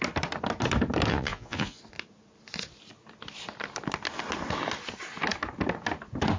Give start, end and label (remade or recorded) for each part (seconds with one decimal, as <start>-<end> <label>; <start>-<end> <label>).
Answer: 0.0-1.1 recorded; 1.1-1.8 remade; 1.8-6.4 recorded